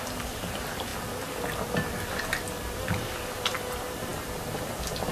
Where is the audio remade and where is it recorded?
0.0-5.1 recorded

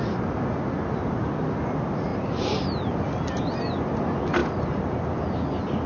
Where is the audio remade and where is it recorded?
0.0-5.9 recorded

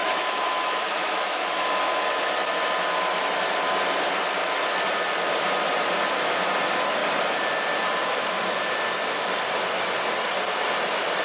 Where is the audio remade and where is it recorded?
0.0-2.3 remade; 2.3-11.2 recorded

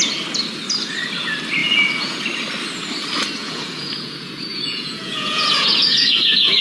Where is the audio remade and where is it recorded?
0.0-1.6 recorded; 1.6-2.2 remade; 2.2-3.4 recorded; 3.4-6.6 remade

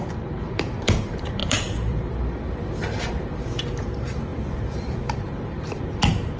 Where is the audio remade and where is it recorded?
0.0-6.4 remade

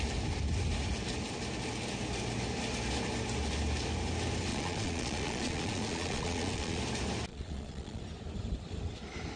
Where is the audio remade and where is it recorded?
0.0-4.5 recorded; 4.5-6.8 remade; 6.8-7.3 recorded; 7.3-8.0 remade; 8.0-9.4 recorded

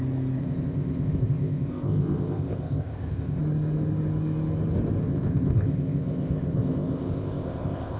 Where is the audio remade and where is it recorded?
0.0-0.4 recorded; 0.4-3.4 remade; 3.4-5.0 recorded; 5.0-8.0 remade